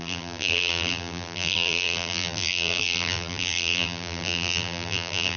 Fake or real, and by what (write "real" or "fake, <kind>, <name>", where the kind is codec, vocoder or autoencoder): fake, vocoder, BigVGAN v2